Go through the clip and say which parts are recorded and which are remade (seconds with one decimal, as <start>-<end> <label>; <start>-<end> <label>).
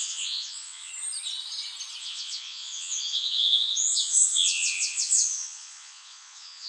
0.0-0.9 remade; 0.9-2.0 recorded; 2.0-6.7 remade